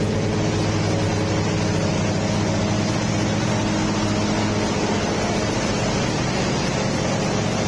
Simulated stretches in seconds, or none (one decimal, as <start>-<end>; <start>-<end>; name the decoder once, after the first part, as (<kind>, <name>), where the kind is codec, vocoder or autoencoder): none